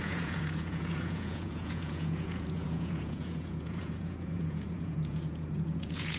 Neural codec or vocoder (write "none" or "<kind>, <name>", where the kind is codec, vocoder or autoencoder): vocoder, Vocos